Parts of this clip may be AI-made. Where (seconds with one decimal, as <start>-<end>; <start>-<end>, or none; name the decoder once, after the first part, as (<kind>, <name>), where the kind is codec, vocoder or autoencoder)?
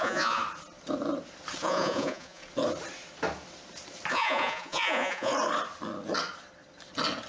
0.0-0.4 (vocoder, Vocos); 1.6-2.4; 4.1-5.3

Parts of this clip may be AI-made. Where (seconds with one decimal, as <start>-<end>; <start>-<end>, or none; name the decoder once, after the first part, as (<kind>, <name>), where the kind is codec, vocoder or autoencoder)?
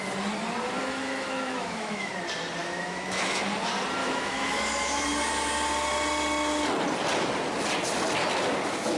0.8-2.1 (autoencoder, DAC-VAE); 2.6-3.4; 4.0-5.0